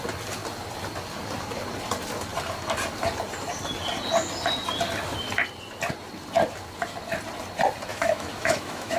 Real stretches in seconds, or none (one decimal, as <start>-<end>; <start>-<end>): 0.0-7.9

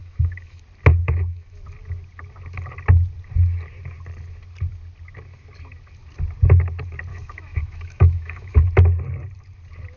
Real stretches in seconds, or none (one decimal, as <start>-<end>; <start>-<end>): 0.6-1.0; 1.6-7.1; 8.6-10.0

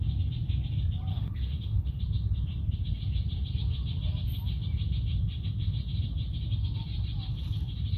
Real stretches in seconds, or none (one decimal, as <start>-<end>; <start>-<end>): 0.0-1.1; 2.0-8.0

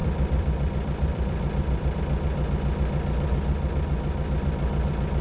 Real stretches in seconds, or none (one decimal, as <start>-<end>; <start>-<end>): 2.0-5.2

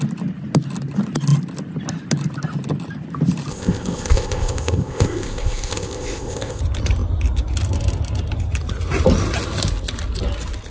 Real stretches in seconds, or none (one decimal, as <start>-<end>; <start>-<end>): 0.0-3.5; 6.6-10.7

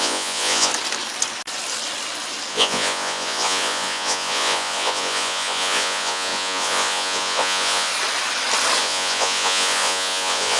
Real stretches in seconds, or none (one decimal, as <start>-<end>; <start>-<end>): 0.7-2.5; 7.9-8.8

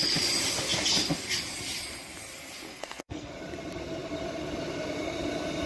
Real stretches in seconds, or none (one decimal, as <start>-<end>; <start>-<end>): 0.0-2.7; 3.3-5.7